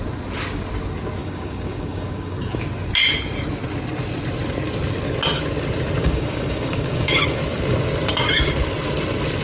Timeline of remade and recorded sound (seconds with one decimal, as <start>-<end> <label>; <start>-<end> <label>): 0.0-1.2 recorded; 1.2-2.6 remade; 2.6-6.0 recorded; 6.0-7.4 remade; 7.4-9.4 recorded

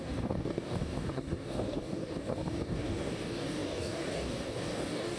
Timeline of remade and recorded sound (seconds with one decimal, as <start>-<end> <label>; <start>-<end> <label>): 0.0-5.2 remade

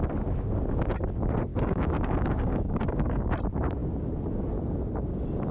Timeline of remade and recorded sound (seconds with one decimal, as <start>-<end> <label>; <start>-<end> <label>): 0.0-1.5 recorded; 1.5-3.3 remade; 3.3-5.5 recorded

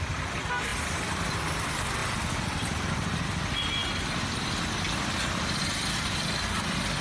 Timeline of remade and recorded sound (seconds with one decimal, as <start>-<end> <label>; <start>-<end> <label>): 0.0-7.0 recorded

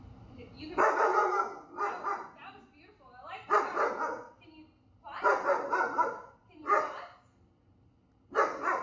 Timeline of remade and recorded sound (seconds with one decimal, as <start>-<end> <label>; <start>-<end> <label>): 0.0-8.8 recorded